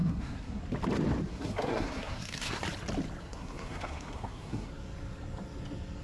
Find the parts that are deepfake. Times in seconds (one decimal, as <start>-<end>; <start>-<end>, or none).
0.0-0.6; 1.3-2.6; 3.2-4.7